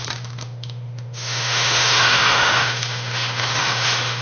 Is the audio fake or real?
fake